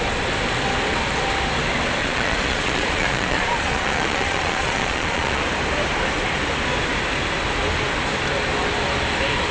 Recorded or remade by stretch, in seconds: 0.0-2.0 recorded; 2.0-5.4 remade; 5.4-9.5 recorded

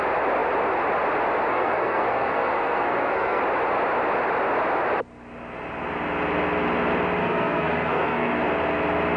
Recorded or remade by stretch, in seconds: 0.0-1.5 recorded; 1.5-3.4 remade; 3.4-7.2 recorded; 7.2-8.4 remade; 8.4-9.2 recorded

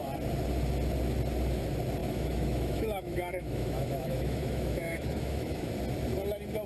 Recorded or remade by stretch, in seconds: 0.0-2.0 recorded; 2.0-5.7 remade; 5.7-6.7 recorded

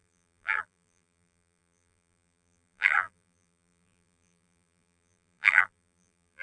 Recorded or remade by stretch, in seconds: 0.0-6.4 remade